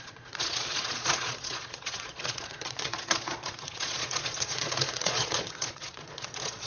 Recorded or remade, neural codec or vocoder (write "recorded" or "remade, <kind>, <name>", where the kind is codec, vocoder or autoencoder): remade, vocoder, Vocos